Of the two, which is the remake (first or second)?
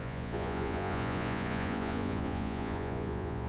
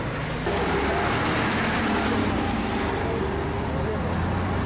first